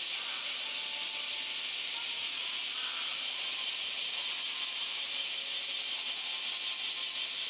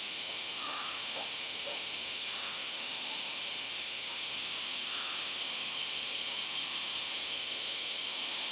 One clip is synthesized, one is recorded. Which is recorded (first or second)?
first